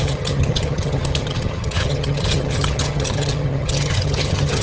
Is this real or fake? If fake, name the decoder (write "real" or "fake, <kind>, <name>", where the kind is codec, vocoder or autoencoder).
fake, vocoder, HiFi-GAN